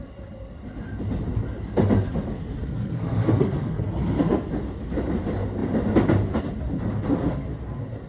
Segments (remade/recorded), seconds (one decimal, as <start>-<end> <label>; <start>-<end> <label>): 0.0-2.6 recorded; 2.6-4.5 remade; 4.5-8.1 recorded